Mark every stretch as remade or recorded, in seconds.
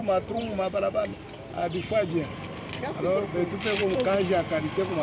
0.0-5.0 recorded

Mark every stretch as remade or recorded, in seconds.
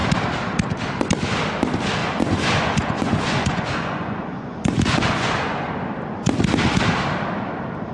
0.0-2.0 recorded; 2.0-5.7 remade; 5.7-7.9 recorded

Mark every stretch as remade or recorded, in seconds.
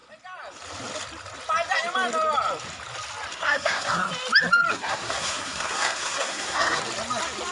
0.0-3.3 recorded; 3.3-4.1 remade; 4.1-4.7 recorded; 4.7-6.8 remade; 6.8-7.5 recorded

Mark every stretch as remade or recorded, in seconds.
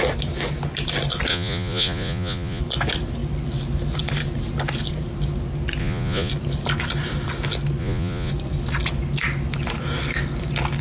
0.0-1.3 recorded; 1.3-2.6 remade; 2.6-5.8 recorded; 5.8-6.3 remade; 6.3-7.8 recorded; 7.8-8.3 remade; 8.3-10.8 recorded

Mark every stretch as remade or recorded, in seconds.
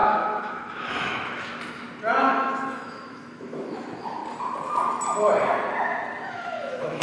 0.0-1.5 remade; 1.5-2.2 recorded; 2.2-4.2 remade; 4.2-6.3 recorded; 6.3-7.0 remade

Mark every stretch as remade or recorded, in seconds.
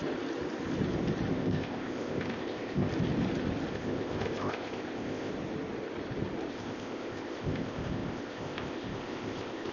0.0-1.3 recorded; 1.3-2.9 remade; 2.9-3.7 recorded; 3.7-5.3 remade; 5.3-6.5 recorded; 6.5-9.7 remade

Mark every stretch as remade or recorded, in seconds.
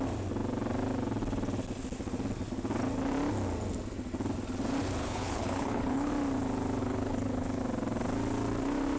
0.0-5.0 recorded; 5.0-6.1 remade; 6.1-6.8 recorded; 6.8-7.6 remade; 7.6-9.0 recorded